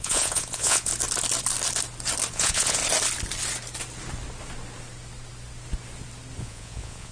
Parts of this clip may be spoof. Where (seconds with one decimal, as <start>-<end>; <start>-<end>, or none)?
0.0-0.9; 2.3-2.8; 6.4-7.1

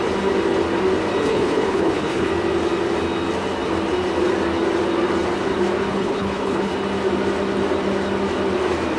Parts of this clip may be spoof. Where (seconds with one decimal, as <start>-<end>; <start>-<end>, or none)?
1.3-2.3; 5.9-6.7

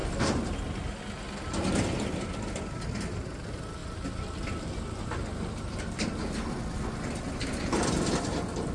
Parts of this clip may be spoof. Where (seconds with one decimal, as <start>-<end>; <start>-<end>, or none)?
none

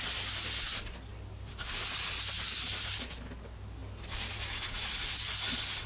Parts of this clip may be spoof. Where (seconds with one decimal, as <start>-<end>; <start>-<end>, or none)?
none

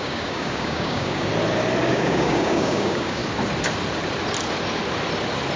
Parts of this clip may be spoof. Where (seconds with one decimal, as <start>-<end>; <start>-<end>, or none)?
0.0-1.3; 1.9-3.2